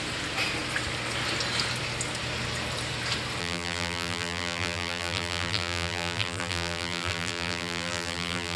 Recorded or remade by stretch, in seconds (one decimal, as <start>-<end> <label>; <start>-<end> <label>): 0.0-3.4 recorded; 3.4-8.6 remade